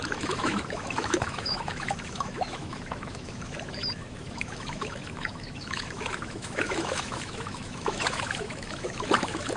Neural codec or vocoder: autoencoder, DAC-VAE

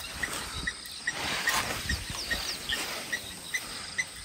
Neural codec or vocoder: none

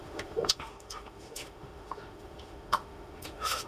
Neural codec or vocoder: autoencoder, DAC-VAE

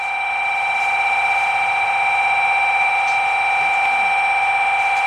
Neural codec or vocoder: none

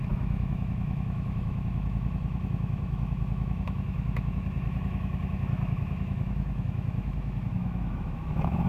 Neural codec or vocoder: autoencoder, DAC-VAE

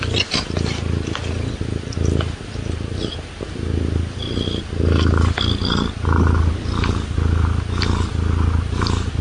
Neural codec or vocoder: none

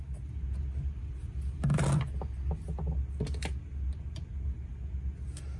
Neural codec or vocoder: none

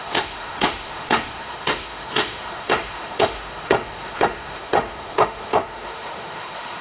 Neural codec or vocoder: autoencoder, DAC-VAE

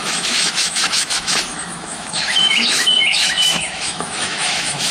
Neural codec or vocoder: autoencoder, DAC-VAE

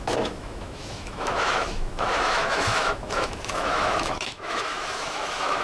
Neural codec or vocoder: autoencoder, DAC-VAE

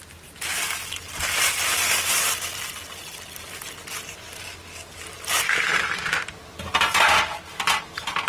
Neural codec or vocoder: none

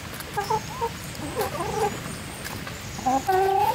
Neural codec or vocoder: none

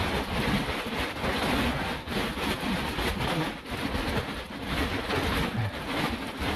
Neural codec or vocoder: none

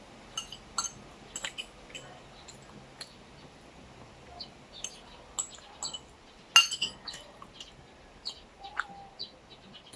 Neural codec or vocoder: none